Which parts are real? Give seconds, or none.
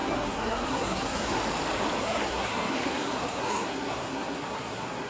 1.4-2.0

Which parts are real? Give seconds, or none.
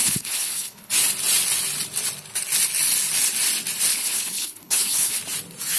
0.9-3.9; 5.2-5.8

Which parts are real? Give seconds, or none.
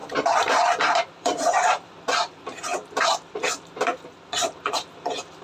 2.7-3.3; 3.9-4.5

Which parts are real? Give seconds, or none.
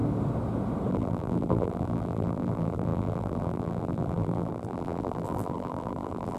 0.0-0.9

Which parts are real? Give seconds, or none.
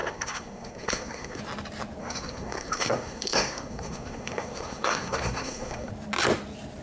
1.4-2.0; 5.9-6.8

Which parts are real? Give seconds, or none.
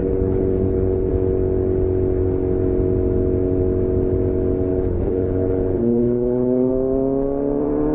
1.1-4.7; 6.7-7.9